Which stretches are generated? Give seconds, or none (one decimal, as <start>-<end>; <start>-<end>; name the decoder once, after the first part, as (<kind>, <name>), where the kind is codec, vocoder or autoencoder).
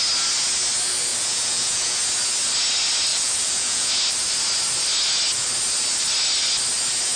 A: 1.1-2.0 (vocoder, Vocos); 3.1-3.9